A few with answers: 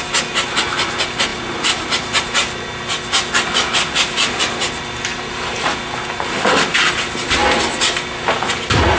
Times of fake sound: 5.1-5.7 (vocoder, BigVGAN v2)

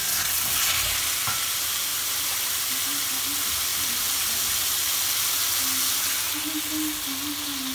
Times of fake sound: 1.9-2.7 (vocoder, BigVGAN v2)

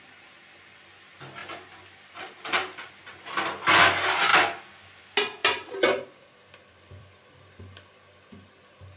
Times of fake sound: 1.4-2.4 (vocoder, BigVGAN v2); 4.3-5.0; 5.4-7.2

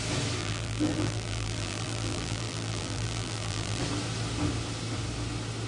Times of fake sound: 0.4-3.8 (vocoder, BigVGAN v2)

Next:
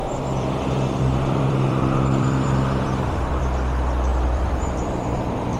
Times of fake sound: 0.0-3.4 (vocoder, BigVGAN v2); 4.1-5.6

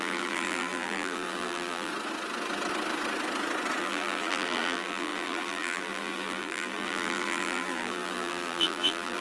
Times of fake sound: 0.0-1.9 (vocoder, BigVGAN v2); 3.8-9.2

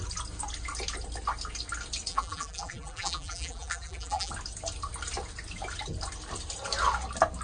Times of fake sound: 2.1-4.3 (vocoder, BigVGAN v2)

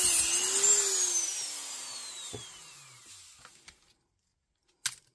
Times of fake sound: none